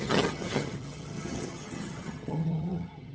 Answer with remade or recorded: remade